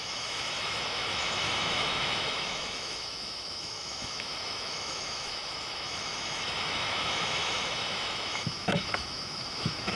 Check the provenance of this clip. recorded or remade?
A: remade